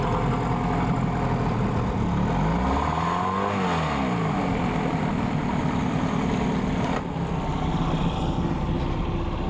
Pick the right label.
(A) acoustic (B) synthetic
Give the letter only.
A